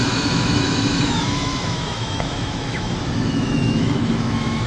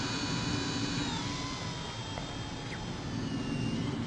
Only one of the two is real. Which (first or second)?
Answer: second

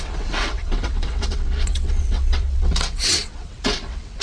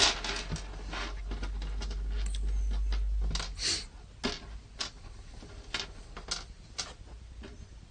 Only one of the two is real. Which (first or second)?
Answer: second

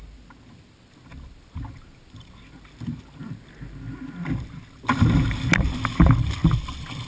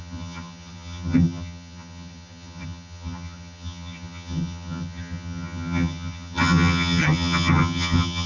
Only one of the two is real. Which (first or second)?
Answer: first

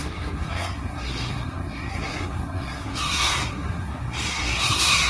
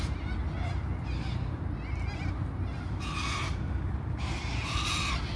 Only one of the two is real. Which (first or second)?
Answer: second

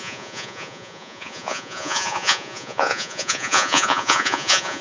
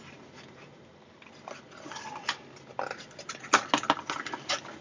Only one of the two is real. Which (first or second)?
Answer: second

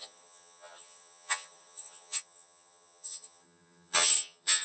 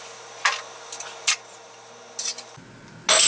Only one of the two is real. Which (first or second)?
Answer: second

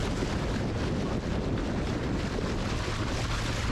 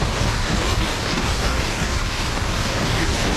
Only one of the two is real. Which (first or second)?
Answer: first